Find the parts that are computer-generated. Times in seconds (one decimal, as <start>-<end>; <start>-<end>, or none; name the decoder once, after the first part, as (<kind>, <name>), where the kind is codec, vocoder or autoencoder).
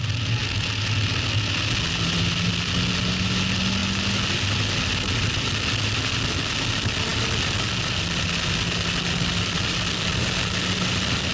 none